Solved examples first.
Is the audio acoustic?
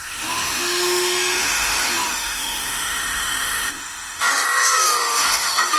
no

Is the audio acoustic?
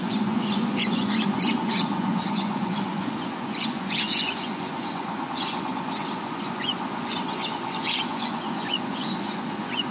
no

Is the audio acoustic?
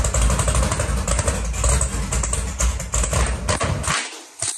yes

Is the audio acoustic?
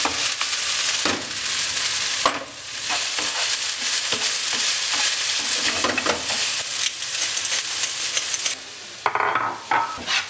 yes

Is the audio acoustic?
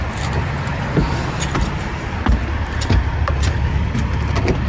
yes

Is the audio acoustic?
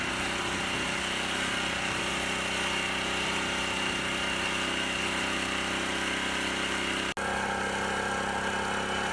yes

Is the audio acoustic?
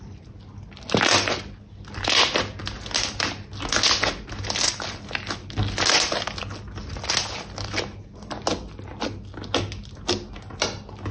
yes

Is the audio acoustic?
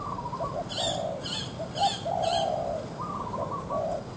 yes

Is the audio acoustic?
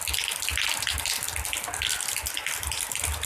yes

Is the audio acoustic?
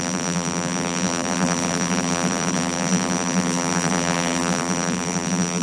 no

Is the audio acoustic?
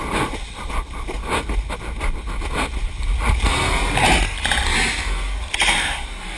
yes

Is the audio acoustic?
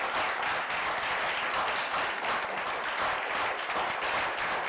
yes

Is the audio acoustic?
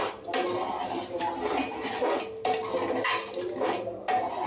yes